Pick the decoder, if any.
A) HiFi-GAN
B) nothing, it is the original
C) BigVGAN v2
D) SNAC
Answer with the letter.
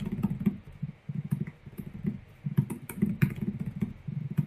B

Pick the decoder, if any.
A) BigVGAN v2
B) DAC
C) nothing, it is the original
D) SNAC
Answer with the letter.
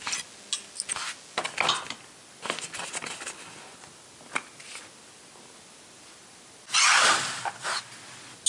C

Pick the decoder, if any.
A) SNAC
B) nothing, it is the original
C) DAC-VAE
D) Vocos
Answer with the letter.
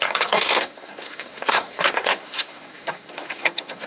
A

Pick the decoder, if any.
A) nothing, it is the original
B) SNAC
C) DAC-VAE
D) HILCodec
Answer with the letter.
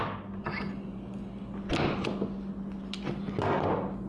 A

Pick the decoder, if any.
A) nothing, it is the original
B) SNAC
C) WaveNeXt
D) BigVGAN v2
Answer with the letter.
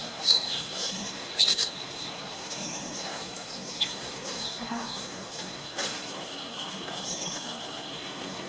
B